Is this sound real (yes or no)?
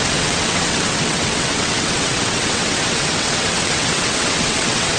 no